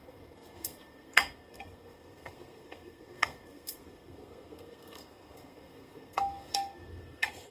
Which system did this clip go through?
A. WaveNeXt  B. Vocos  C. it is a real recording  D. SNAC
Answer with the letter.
D